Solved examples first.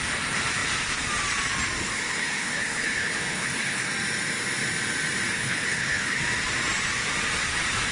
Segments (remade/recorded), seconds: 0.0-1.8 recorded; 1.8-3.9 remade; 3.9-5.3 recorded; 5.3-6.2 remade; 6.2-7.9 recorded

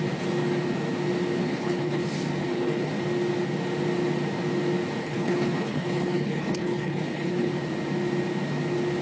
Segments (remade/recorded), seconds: 0.0-1.4 recorded; 1.4-2.0 remade; 2.0-2.4 recorded; 2.4-2.9 remade; 2.9-5.0 recorded; 5.0-7.5 remade; 7.5-9.0 recorded

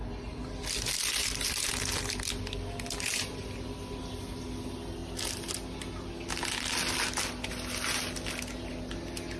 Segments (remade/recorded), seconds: 0.0-9.4 recorded

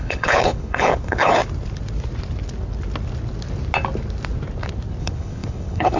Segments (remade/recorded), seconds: 0.0-1.4 remade; 1.4-5.0 recorded; 5.0-6.0 remade